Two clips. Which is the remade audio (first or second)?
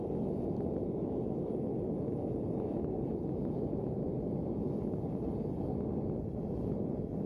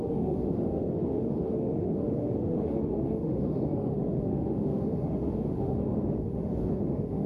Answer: second